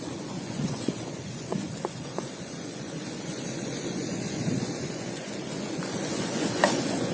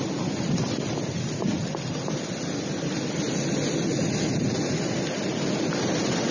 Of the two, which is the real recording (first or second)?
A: second